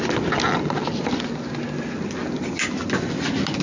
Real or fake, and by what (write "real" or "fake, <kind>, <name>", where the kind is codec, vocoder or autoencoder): real